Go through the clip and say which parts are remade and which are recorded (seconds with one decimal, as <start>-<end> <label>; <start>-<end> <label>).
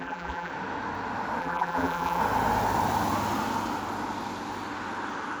0.0-0.5 remade; 0.5-1.4 recorded; 1.4-2.2 remade; 2.2-5.4 recorded